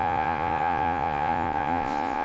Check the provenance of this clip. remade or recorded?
remade